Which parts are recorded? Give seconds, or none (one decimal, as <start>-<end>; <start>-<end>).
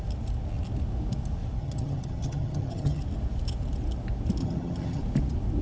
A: 0.0-1.6; 3.0-4.4; 5.0-5.6